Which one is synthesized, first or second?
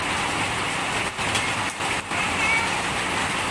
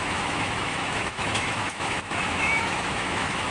second